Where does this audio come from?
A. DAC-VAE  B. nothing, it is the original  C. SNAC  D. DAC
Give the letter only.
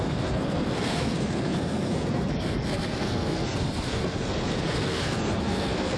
C